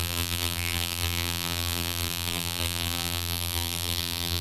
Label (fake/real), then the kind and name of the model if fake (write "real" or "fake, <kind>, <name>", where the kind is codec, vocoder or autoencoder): fake, vocoder, BigVGAN v2